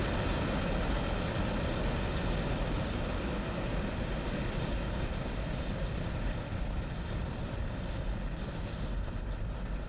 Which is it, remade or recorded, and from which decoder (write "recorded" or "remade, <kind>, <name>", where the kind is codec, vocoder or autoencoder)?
recorded